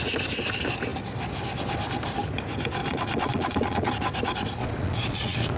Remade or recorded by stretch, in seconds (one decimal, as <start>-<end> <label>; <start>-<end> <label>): 0.0-2.8 recorded; 2.8-3.9 remade; 3.9-4.6 recorded; 4.6-5.6 remade